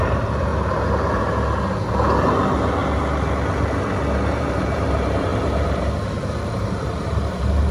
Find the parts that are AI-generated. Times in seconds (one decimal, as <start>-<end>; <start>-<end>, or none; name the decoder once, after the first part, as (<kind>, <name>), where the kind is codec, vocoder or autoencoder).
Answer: 0.0-0.5 (vocoder, BigVGAN v2); 2.3-2.8; 4.3-7.7